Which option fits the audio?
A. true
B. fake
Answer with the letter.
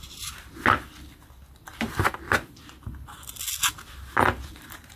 A